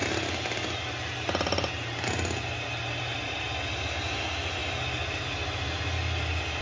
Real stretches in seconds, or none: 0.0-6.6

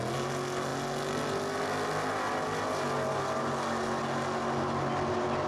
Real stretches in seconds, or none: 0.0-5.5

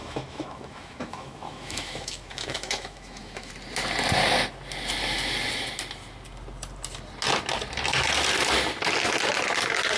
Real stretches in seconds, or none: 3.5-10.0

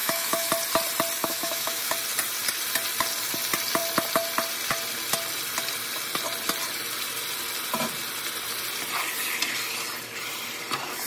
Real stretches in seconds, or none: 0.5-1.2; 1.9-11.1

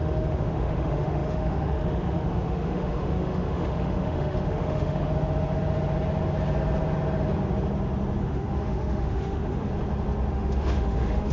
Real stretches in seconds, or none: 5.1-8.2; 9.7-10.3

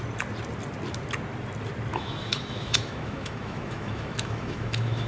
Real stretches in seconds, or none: 0.0-1.9